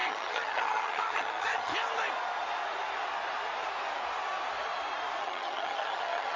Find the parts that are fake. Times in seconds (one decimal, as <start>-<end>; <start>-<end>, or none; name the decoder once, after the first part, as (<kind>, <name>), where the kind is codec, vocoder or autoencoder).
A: 0.0-1.7 (vocoder, HiFi-GAN); 5.2-6.4